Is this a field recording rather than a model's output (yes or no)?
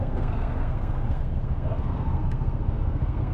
no